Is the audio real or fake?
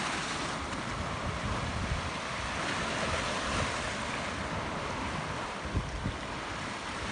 real